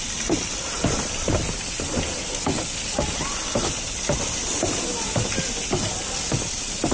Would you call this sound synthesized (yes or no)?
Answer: no